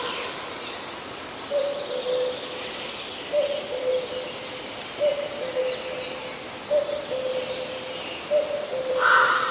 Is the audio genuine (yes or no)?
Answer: yes